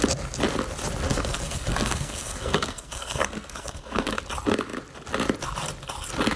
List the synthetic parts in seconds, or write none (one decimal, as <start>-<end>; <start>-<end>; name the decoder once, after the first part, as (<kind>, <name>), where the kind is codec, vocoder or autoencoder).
1.1-4.2 (codec, SNAC)